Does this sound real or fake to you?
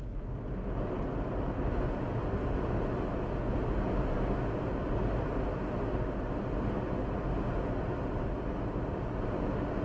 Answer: real